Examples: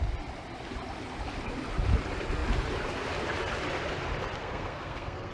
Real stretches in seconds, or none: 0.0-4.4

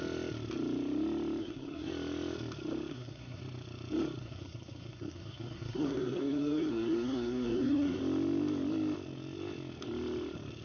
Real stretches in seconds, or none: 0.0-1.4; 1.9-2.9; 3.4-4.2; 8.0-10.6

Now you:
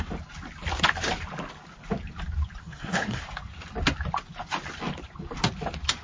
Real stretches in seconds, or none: 0.0-2.6; 3.2-6.0